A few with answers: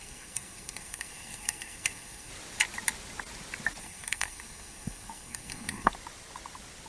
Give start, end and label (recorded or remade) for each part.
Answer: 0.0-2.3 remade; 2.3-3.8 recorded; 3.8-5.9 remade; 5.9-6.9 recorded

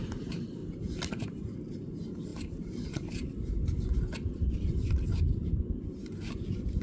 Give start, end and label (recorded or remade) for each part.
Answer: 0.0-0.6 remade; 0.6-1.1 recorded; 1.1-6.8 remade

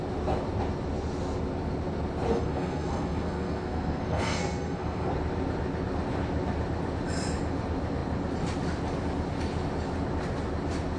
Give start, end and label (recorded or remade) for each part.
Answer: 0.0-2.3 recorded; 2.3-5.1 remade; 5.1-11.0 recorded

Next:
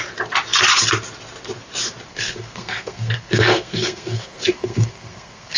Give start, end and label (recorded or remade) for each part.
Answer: 0.0-2.1 recorded; 2.1-5.6 remade

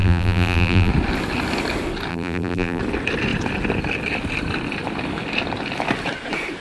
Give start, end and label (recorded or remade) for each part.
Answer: 0.0-0.9 remade; 0.9-2.1 recorded; 2.1-2.8 remade; 2.8-6.6 recorded